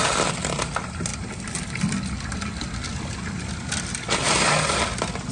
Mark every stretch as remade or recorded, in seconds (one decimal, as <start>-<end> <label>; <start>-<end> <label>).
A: 0.0-1.1 recorded; 1.1-1.8 remade; 1.8-2.9 recorded; 2.9-3.5 remade; 3.5-5.3 recorded